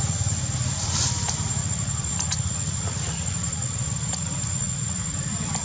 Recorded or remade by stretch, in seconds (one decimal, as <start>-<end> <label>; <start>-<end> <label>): 0.0-1.6 recorded; 1.6-5.0 remade; 5.0-5.6 recorded